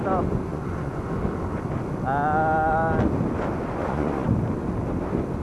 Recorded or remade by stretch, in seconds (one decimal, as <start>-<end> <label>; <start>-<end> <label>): 0.0-0.5 recorded; 0.5-1.1 remade; 1.1-3.8 recorded; 3.8-4.3 remade; 4.3-5.4 recorded